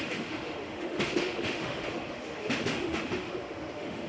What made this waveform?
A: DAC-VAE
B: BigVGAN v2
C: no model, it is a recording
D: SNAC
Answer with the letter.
A